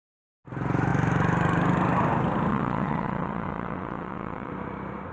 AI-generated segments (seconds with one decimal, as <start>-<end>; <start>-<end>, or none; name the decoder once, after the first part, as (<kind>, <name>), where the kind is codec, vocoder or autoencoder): 2.5-4.5 (vocoder, WaveNeXt)